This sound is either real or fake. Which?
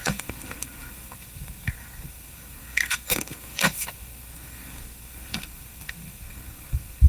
fake